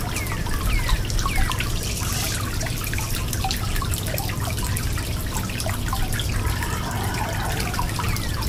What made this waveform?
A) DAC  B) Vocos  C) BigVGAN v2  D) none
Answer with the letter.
D